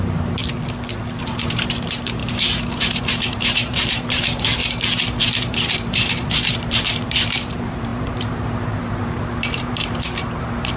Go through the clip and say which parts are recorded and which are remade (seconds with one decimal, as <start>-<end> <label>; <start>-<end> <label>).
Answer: 0.0-0.4 remade; 0.4-1.2 recorded; 1.2-4.6 remade; 4.6-5.2 recorded; 5.2-10.8 remade